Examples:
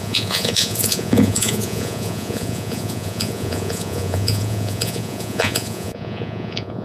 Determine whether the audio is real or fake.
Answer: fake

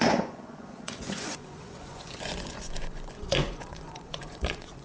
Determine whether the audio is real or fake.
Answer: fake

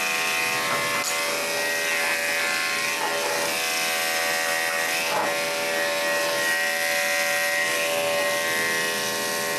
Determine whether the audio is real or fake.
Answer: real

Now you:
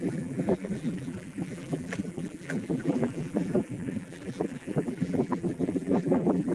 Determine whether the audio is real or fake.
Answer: fake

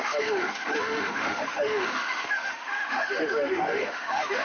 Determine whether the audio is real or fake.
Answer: fake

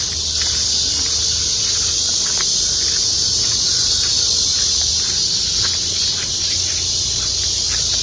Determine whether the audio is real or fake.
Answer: real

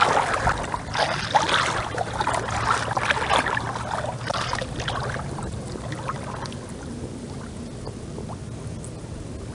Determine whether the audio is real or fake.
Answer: real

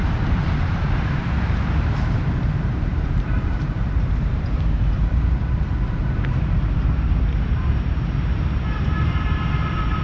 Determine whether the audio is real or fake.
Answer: fake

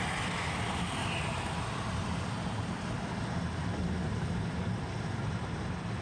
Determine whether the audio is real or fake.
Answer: real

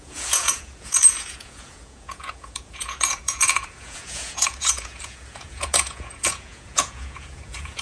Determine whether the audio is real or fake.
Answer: fake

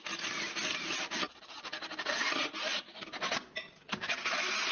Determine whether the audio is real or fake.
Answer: real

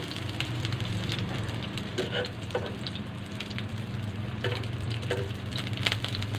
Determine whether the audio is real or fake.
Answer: fake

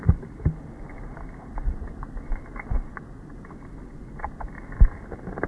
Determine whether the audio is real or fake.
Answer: real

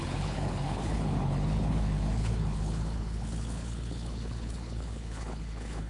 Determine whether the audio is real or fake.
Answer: fake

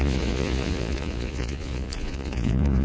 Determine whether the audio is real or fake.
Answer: fake